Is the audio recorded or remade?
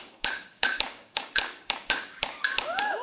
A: remade